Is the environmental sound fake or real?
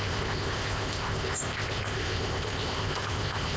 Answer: fake